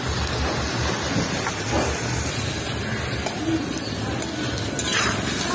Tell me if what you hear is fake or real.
real